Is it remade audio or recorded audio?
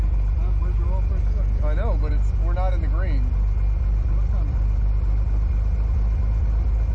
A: recorded